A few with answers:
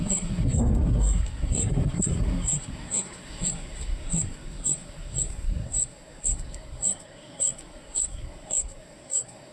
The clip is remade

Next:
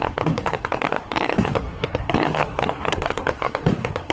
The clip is remade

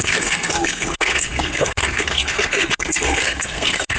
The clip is remade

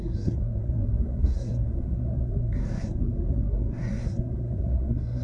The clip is remade